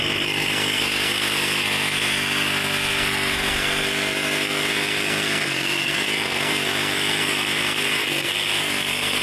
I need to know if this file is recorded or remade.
remade